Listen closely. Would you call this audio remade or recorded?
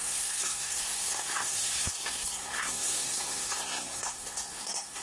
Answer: remade